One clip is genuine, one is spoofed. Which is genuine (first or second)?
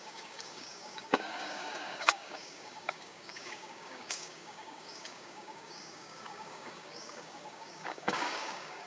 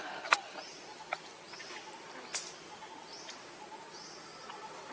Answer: second